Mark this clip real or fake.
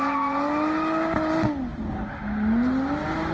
real